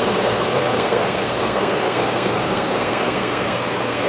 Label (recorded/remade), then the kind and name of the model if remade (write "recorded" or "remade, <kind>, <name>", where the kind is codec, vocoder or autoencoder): remade, codec, SNAC